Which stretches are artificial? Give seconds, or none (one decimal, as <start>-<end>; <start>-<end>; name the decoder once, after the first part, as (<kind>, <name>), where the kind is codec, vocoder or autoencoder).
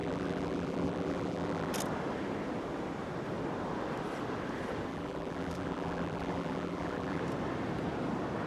0.0-1.7 (vocoder, BigVGAN v2); 4.9-7.2